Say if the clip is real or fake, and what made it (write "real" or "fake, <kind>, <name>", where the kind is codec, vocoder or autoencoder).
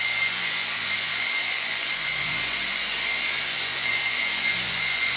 fake, vocoder, Vocos